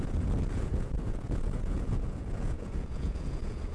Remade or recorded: remade